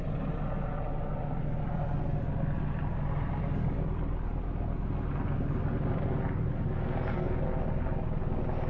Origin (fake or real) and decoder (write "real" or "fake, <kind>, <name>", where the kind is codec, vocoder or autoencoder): real